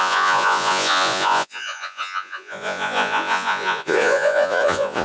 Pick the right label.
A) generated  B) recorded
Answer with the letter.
A